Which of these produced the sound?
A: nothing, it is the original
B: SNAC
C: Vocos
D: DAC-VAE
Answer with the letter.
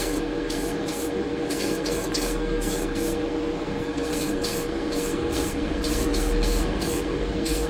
B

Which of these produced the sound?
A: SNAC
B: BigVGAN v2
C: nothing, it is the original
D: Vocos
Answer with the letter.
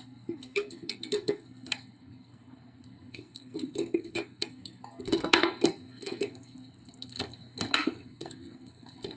A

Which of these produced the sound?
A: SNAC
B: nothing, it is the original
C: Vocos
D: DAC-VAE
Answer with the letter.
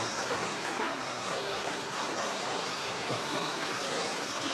A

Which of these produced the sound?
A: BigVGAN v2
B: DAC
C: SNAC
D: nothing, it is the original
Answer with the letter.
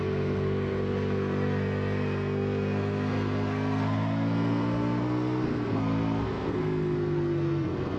C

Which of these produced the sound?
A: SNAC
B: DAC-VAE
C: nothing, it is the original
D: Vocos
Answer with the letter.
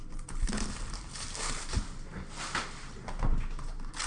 C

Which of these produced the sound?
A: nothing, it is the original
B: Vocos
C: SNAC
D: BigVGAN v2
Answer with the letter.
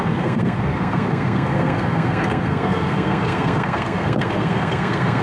C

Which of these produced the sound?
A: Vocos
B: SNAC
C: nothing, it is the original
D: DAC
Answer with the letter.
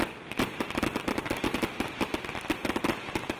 C